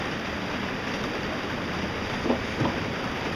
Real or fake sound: fake